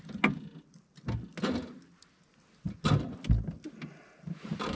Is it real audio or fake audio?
real